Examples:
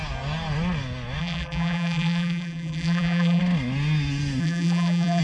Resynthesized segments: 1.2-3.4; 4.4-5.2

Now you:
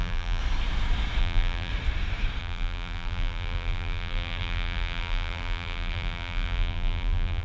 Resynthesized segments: 0.0-0.4; 1.2-1.7; 2.4-7.4

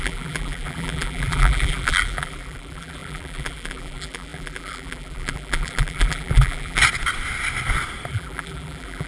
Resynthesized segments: 0.0-6.8; 8.1-9.1

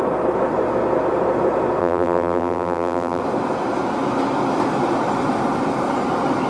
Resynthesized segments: 1.8-3.2

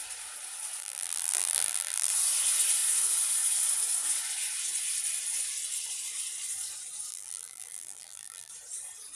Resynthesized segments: 0.8-2.1; 7.1-8.5